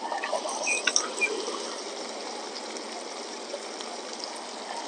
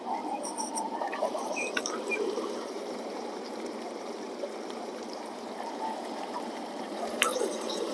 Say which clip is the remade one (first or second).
second